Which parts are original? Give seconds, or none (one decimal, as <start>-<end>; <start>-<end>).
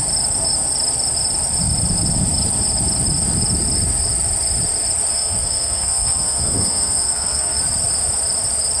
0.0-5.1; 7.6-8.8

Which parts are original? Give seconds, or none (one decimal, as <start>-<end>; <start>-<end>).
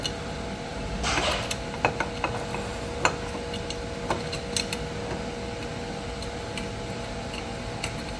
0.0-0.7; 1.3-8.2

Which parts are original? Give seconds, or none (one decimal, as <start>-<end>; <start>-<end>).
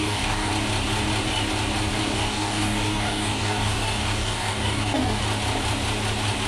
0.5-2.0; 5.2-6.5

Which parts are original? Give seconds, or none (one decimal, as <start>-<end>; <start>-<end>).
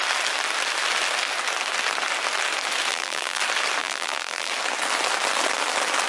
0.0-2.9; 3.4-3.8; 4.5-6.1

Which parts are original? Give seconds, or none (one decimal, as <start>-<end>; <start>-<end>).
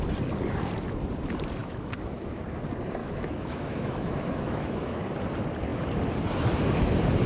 0.0-1.6; 2.4-3.0; 5.0-7.3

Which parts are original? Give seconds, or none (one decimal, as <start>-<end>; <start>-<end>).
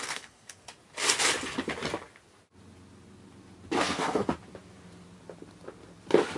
0.7-3.8; 4.2-6.4